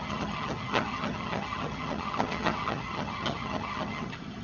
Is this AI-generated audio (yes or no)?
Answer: yes